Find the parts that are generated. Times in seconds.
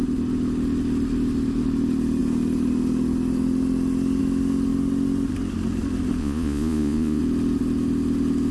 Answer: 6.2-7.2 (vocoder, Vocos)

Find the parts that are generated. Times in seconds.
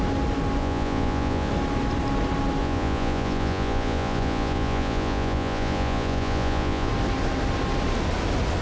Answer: 0.6-1.5 (vocoder, Vocos); 2.6-6.9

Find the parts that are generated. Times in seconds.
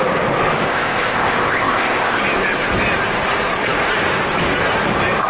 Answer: 0.6-2.2 (codec, ZipCodec)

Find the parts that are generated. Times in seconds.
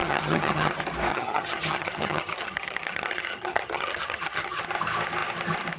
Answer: 0.0-0.7 (vocoder, HiFi-GAN); 1.1-4.6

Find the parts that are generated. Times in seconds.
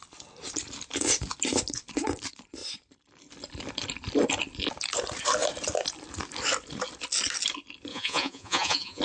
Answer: 7.9-9.0 (vocoder, Vocos)